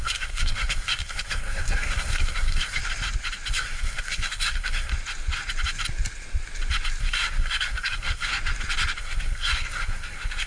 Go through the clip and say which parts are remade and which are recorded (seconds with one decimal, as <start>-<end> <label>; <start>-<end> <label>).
0.0-2.8 remade; 2.8-3.5 recorded; 3.5-4.9 remade; 4.9-7.0 recorded; 7.0-8.3 remade; 8.3-9.0 recorded; 9.0-10.5 remade